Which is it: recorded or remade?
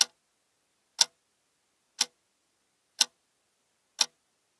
recorded